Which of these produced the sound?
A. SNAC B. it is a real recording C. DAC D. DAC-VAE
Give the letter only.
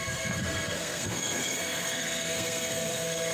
A